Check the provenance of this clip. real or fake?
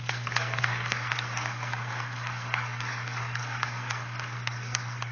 fake